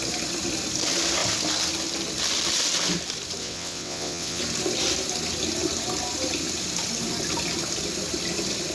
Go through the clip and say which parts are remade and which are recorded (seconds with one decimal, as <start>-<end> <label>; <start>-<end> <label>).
0.0-3.4 recorded; 3.4-4.4 remade; 4.4-8.7 recorded